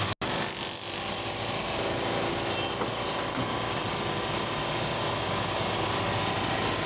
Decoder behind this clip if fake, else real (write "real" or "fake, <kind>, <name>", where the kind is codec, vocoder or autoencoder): real